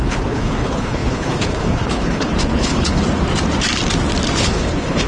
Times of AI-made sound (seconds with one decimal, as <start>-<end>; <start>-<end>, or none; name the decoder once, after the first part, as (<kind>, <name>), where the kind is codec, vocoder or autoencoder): 0.0-3.0 (codec, HILCodec); 4.4-5.1